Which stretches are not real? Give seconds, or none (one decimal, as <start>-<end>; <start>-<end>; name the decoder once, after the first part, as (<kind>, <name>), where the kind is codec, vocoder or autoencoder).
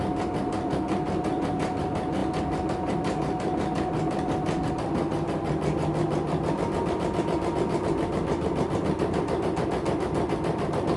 none